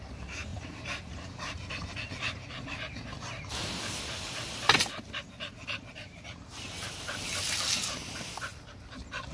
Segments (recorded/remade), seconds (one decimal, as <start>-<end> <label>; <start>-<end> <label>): 0.0-9.3 recorded